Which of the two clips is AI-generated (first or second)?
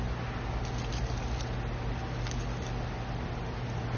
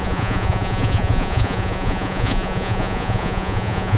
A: second